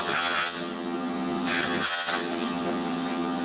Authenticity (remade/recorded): remade